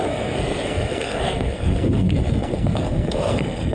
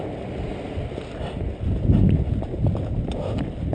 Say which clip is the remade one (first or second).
first